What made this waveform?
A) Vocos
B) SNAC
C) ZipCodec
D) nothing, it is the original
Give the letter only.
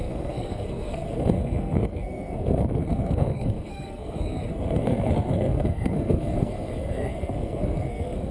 B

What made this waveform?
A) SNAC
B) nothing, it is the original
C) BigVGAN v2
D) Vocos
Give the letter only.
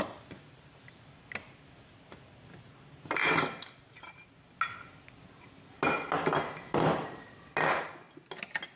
B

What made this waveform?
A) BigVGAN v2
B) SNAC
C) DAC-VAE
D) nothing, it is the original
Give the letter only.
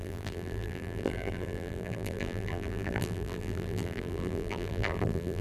A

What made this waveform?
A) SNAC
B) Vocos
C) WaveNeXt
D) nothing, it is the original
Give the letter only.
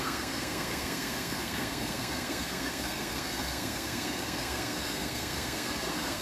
A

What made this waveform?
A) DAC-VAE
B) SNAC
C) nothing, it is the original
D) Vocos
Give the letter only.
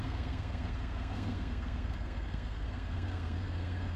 B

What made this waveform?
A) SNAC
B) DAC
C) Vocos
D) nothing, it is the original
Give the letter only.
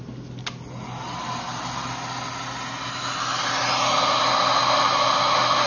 D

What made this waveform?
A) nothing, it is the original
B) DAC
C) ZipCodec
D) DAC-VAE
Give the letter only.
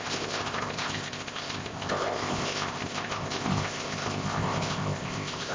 C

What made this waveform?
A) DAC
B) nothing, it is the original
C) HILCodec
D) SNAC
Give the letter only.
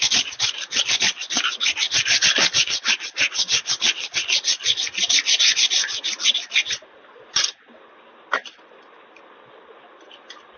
B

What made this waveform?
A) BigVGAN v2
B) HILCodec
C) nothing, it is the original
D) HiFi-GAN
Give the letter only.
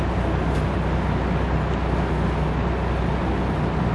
C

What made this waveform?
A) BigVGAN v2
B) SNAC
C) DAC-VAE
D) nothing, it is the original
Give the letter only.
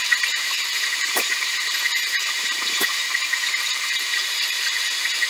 A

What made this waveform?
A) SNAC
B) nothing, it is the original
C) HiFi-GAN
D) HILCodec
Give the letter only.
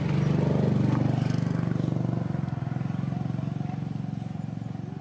B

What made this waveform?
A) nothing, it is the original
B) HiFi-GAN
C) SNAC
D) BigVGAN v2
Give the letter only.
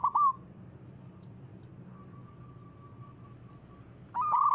A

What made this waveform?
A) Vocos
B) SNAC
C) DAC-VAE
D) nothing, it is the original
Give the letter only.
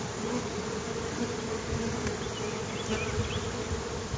D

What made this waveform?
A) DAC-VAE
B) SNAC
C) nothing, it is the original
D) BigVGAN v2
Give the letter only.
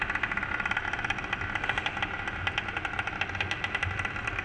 C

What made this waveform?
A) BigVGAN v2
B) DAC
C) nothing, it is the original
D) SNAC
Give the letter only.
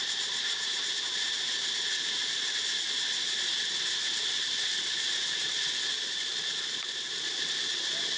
C